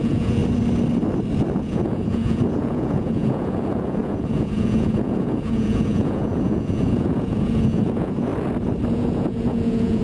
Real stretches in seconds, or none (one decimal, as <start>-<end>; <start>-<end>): 0.4-1.6; 8.3-8.9

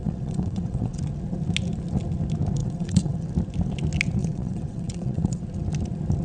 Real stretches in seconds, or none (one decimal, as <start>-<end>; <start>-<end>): 1.0-2.6; 3.3-4.2; 5.4-6.2

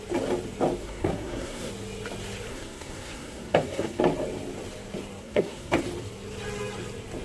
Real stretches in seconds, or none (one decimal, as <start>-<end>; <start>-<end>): 0.0-0.8; 1.7-2.5; 4.0-5.2; 5.8-7.2

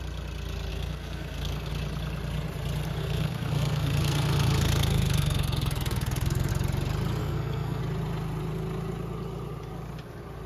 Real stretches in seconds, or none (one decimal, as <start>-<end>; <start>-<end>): 0.0-0.7; 1.7-3.0; 6.5-7.2; 7.8-10.5

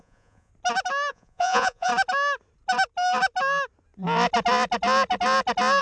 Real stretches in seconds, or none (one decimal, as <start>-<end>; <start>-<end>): 0.5-1.1; 1.9-5.8

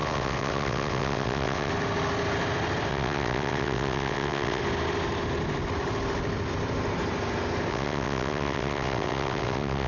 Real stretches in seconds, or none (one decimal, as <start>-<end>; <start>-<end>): 1.7-2.9; 4.6-7.7

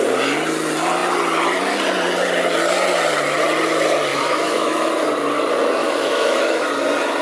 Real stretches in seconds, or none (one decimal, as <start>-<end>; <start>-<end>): 0.0-4.1; 4.9-5.8; 6.7-7.2